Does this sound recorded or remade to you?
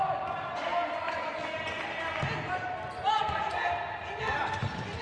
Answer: recorded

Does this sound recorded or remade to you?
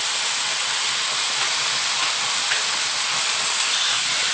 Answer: recorded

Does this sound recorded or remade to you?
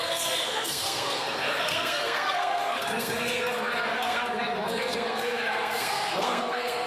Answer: remade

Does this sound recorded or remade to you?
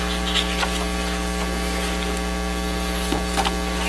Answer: recorded